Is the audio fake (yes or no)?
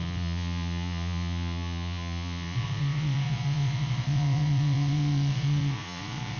yes